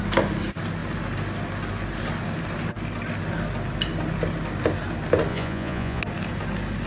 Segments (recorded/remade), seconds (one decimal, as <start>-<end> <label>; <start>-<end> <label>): 0.0-5.3 recorded; 5.3-6.0 remade; 6.0-6.9 recorded